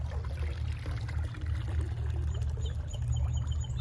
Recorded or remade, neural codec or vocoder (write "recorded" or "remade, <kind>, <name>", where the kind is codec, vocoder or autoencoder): recorded